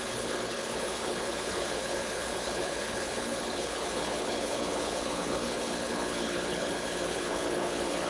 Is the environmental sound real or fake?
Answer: fake